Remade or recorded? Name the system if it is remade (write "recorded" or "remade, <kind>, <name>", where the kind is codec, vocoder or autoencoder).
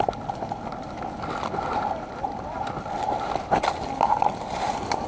recorded